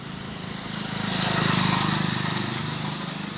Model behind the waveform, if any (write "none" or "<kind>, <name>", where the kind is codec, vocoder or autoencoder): none